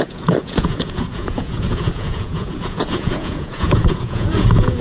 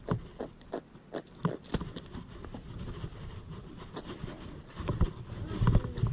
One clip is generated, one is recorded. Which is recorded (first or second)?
second